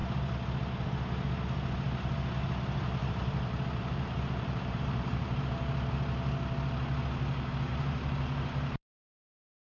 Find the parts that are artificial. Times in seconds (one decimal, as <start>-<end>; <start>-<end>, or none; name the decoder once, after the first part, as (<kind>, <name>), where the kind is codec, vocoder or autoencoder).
3.0-5.4 (vocoder, BigVGAN v2); 7.7-9.1